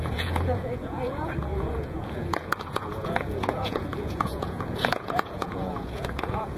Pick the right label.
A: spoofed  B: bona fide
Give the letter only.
A